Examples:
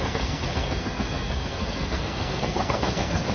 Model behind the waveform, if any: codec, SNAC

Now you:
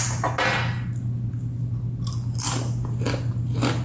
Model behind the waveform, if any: none